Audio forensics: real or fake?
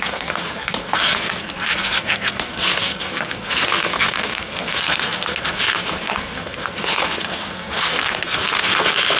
fake